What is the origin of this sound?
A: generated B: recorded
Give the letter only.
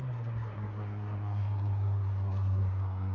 A